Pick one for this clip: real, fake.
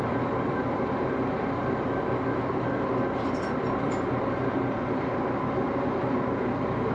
fake